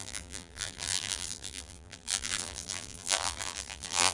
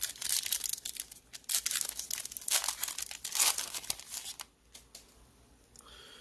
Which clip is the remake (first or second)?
first